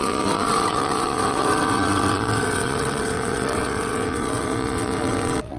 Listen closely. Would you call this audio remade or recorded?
remade